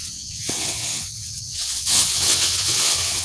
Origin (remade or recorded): remade